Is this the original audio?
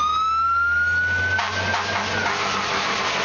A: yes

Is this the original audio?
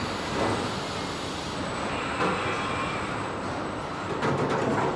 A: yes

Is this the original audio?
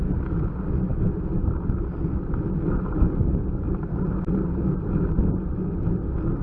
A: yes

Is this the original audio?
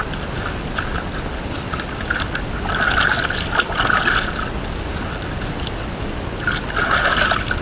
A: yes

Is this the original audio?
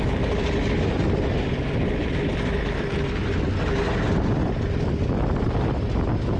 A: yes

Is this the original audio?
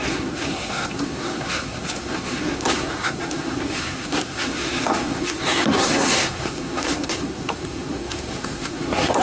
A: no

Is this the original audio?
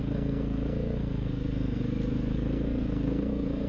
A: no